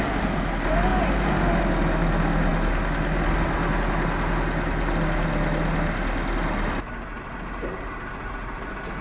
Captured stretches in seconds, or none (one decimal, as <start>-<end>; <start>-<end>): 0.0-9.0